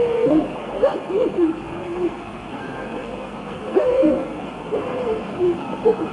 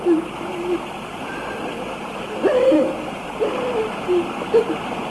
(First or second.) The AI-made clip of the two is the first